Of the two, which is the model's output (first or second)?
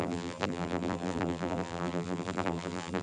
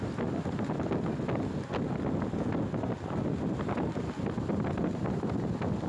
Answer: first